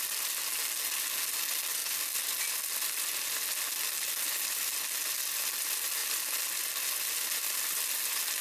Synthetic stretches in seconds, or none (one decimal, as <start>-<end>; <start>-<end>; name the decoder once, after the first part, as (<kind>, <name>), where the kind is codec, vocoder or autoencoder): none